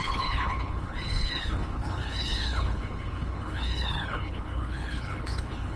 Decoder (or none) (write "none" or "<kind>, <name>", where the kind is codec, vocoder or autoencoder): codec, HILCodec